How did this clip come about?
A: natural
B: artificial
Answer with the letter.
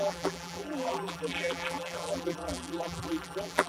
B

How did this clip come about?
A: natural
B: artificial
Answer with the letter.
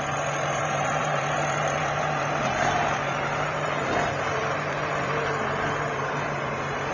B